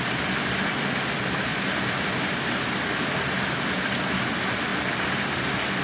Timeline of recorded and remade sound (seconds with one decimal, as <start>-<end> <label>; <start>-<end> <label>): 0.0-5.8 recorded